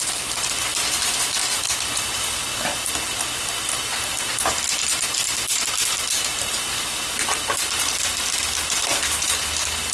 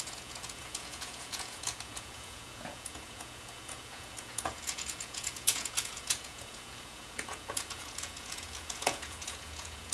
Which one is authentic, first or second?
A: first